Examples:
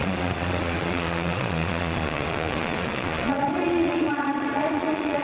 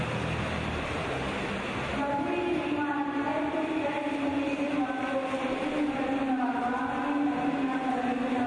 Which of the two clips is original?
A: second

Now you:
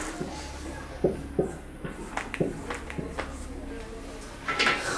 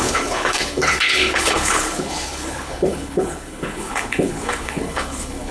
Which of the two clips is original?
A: first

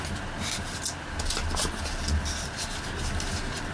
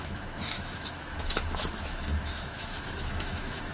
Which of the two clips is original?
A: first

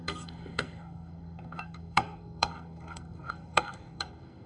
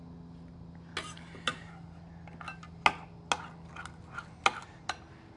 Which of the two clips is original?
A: second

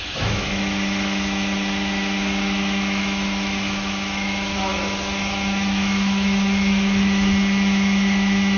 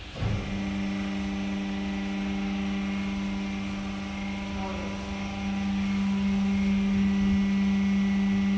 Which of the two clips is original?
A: second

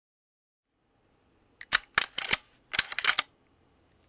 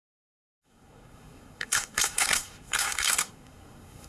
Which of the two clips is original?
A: first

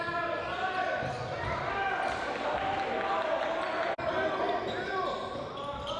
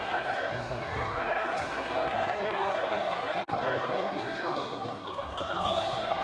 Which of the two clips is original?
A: first